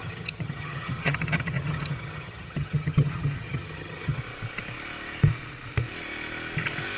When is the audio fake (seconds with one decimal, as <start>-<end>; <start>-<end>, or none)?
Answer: 0.0-4.2